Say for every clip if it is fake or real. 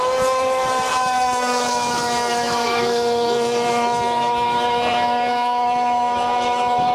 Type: fake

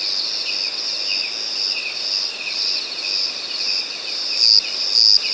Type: real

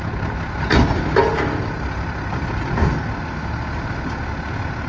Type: real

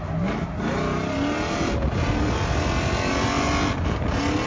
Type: real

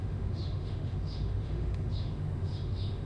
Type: fake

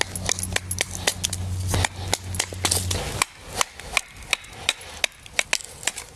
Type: real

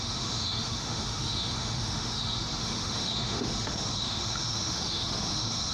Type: fake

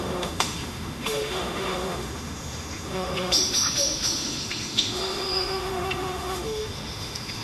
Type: fake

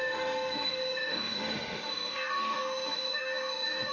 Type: fake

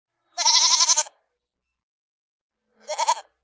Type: real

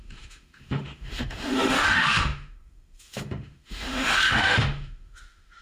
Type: fake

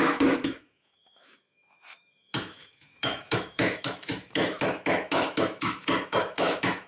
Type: fake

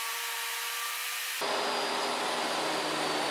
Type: real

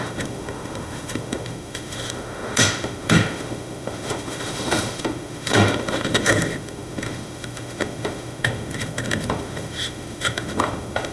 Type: fake